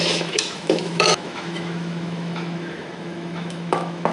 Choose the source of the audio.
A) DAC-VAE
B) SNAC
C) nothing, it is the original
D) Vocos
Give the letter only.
A